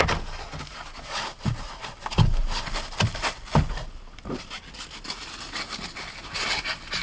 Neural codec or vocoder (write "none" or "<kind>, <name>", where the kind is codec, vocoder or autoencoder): none